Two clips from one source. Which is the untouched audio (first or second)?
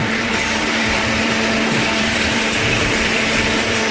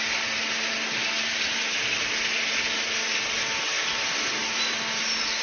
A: second